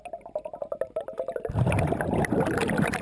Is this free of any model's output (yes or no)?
yes